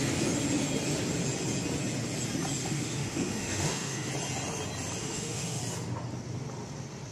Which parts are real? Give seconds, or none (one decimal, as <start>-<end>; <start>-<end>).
0.0-2.6; 4.1-5.0; 5.6-7.1